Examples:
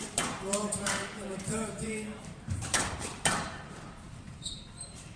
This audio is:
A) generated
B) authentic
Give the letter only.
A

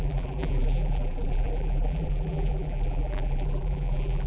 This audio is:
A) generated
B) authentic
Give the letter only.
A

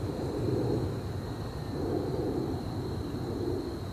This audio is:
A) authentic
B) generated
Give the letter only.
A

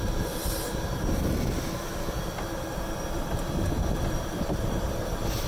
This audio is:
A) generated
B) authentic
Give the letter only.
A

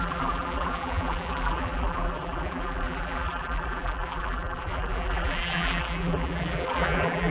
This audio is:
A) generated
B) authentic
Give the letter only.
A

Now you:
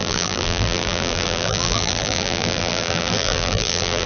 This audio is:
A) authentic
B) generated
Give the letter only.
B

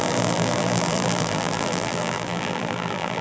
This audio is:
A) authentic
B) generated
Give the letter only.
B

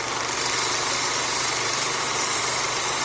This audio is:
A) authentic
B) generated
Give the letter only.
B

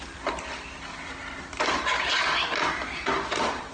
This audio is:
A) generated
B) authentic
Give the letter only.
A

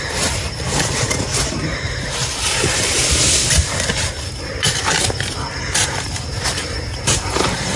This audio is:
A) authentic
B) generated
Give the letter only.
B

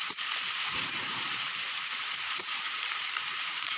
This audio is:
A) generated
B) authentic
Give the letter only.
A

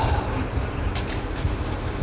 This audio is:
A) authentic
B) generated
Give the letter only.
B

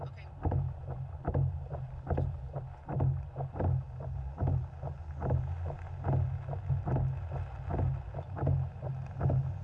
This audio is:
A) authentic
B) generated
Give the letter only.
A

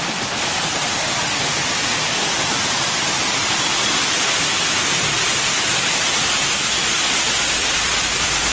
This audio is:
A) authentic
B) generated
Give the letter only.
B